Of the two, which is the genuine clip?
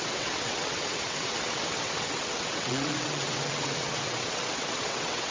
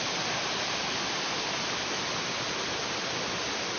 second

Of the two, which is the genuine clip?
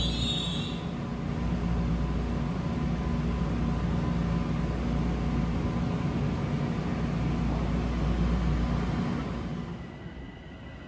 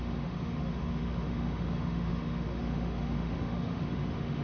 first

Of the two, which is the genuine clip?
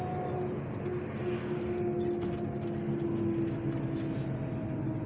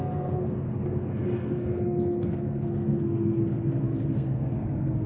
first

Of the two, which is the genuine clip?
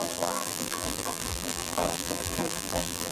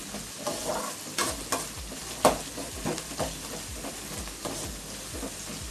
second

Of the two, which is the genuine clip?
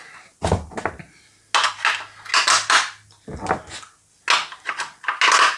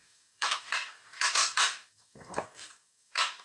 first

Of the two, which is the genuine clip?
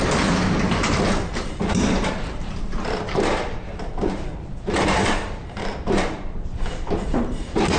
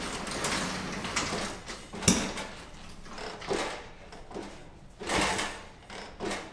second